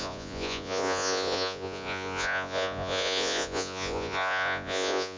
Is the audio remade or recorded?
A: remade